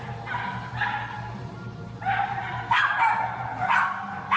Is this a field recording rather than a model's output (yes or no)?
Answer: yes